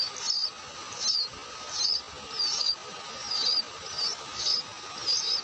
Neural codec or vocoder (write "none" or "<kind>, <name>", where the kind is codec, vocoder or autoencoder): none